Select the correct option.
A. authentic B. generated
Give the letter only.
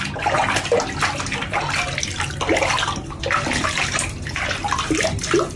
A